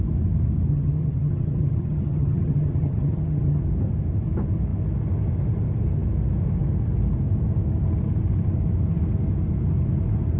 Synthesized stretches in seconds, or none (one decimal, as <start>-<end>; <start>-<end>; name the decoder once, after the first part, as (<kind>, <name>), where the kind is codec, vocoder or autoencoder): 0.7-3.6 (vocoder, HiFi-GAN)